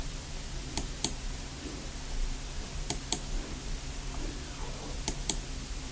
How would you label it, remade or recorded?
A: remade